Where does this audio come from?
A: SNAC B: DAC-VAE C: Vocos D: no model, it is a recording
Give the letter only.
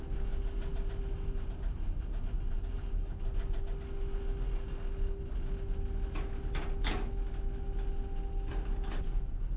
D